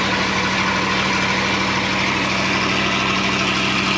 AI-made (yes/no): no